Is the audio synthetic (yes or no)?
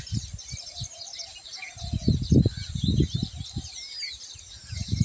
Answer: no